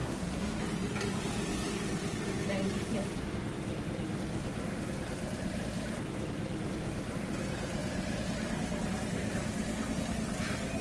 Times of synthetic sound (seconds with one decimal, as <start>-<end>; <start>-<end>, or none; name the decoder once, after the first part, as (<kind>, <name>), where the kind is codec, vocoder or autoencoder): 0.0-0.6 (codec, SNAC)